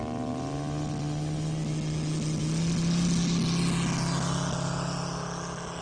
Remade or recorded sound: recorded